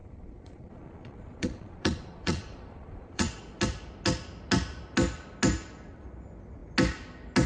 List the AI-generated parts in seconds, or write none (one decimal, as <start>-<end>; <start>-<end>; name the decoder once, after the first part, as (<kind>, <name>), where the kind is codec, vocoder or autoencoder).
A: 0.0-3.6 (vocoder, Vocos)